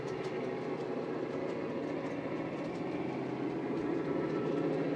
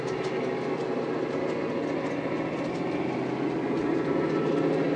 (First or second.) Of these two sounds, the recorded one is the second